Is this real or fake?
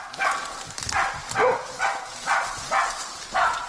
real